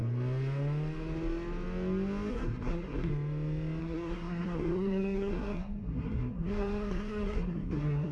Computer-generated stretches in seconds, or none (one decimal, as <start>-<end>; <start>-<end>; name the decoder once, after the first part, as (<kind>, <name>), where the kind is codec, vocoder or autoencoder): 2.3-3.1 (codec, SNAC); 3.8-8.1